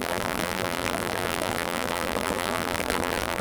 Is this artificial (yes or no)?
yes